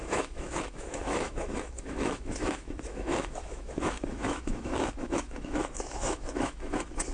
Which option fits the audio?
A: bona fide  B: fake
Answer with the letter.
B